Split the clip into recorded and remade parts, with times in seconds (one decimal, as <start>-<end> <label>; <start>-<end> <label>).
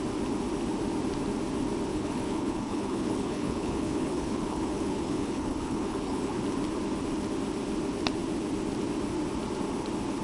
0.0-1.9 recorded; 1.9-6.4 remade; 6.4-10.2 recorded